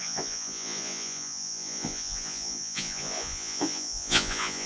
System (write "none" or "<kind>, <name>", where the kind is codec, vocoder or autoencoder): vocoder, Vocos